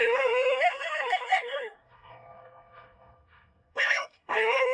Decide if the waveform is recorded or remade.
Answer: remade